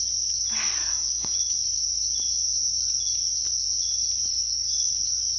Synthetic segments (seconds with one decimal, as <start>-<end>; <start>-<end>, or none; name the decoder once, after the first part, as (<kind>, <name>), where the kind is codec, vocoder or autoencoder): 0.9-1.5 (codec, SNAC); 4.3-4.9